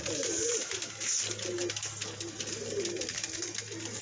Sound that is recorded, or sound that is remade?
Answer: recorded